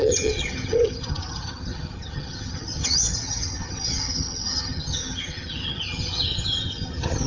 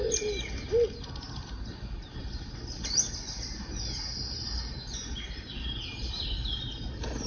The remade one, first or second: first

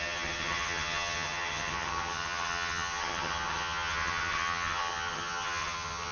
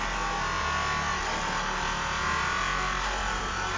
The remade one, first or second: first